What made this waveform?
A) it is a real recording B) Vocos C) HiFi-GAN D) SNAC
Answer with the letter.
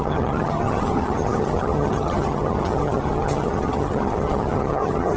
C